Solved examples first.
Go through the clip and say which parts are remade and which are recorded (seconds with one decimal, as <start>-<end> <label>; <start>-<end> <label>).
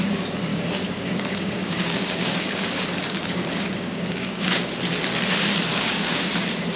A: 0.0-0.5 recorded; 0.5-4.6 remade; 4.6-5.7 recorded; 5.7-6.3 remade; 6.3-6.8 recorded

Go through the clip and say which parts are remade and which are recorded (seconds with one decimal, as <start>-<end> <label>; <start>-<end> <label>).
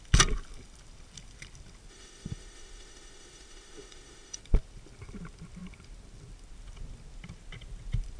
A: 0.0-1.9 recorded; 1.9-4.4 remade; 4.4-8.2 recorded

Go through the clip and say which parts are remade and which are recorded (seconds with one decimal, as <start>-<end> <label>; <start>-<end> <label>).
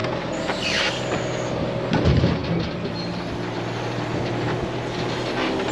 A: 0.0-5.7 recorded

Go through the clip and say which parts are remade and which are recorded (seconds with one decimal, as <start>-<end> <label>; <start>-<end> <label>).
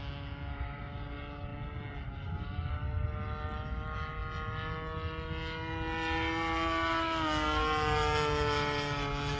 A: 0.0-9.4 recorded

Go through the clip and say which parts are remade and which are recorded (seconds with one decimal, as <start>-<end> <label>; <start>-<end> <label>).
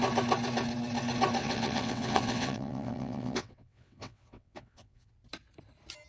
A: 0.0-1.4 recorded; 1.4-5.1 remade; 5.1-6.1 recorded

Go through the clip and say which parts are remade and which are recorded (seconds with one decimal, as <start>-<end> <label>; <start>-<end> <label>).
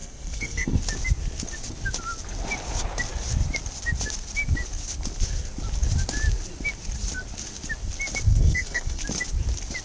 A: 0.0-0.8 remade; 0.8-8.3 recorded; 8.3-9.0 remade; 9.0-9.8 recorded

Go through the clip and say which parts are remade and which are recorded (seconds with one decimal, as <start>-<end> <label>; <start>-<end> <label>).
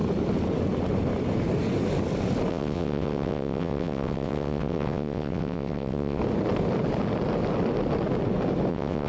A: 0.0-2.5 recorded; 2.5-6.2 remade; 6.2-8.7 recorded; 8.7-9.1 remade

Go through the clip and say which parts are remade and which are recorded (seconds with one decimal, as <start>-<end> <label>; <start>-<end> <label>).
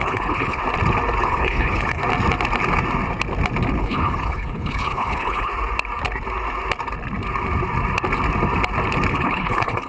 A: 0.0-0.6 remade; 0.6-1.2 recorded; 1.2-2.0 remade; 2.0-3.8 recorded; 3.8-5.5 remade; 5.5-9.1 recorded; 9.1-9.9 remade